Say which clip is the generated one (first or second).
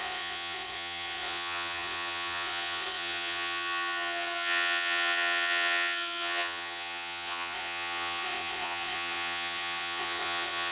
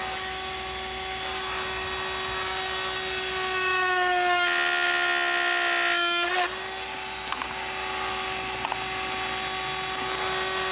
first